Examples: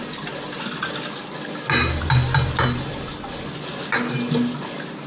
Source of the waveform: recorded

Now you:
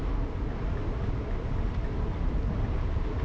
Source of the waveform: recorded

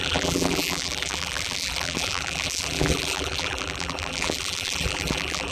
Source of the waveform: remade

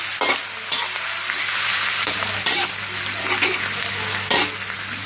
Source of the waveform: recorded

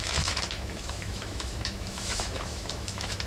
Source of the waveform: remade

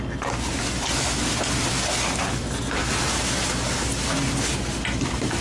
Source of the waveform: recorded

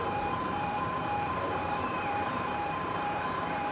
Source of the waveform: remade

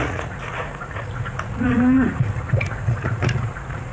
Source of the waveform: remade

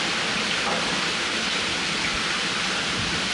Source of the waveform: recorded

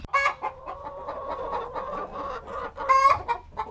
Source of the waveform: recorded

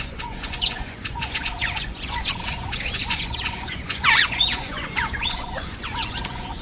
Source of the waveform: remade